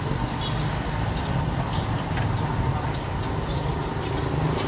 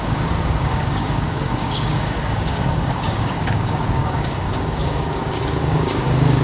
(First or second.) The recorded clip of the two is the first